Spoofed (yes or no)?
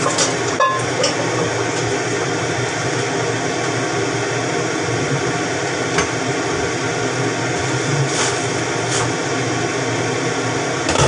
no